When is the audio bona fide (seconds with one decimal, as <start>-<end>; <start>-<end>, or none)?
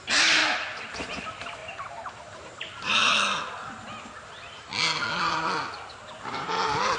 0.4-0.9; 3.1-4.0; 5.0-6.2